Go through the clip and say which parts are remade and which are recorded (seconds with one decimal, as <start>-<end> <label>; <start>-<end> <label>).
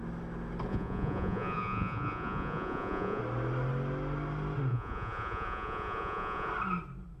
0.0-0.7 recorded; 0.7-3.2 remade; 3.2-4.7 recorded; 4.7-6.5 remade; 6.5-7.2 recorded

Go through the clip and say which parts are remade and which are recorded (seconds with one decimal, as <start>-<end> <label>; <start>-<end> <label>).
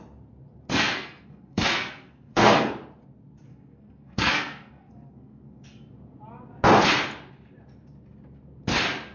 0.0-0.7 recorded; 0.7-2.7 remade; 2.7-3.5 recorded; 3.5-5.9 remade; 5.9-9.1 recorded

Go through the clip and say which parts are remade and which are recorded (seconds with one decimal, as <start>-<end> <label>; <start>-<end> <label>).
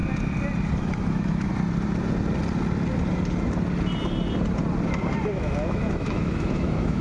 0.0-1.1 recorded; 1.1-1.5 remade; 1.5-5.3 recorded; 5.3-7.0 remade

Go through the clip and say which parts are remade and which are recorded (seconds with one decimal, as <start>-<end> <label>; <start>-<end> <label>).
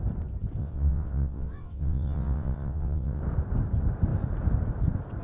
0.0-0.6 recorded; 0.6-3.2 remade; 3.2-5.2 recorded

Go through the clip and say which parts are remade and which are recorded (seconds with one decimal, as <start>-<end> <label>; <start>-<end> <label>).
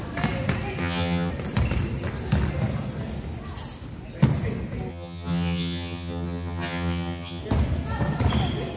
0.0-0.8 recorded; 0.8-1.3 remade; 1.3-4.9 recorded; 4.9-7.4 remade; 7.4-8.8 recorded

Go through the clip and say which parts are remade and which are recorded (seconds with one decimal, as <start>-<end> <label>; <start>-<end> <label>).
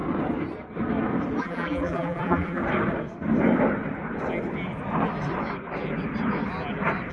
0.0-1.4 recorded; 1.4-2.6 remade; 2.6-7.1 recorded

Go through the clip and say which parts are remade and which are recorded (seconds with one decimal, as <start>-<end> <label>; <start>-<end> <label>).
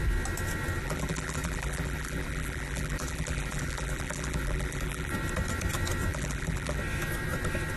0.0-0.8 recorded; 0.8-5.1 remade; 5.1-6.1 recorded; 6.1-6.8 remade; 6.8-7.8 recorded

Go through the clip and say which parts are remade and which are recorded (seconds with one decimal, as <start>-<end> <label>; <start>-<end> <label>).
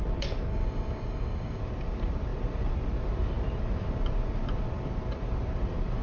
0.0-0.5 recorded; 0.5-1.6 remade; 1.6-6.0 recorded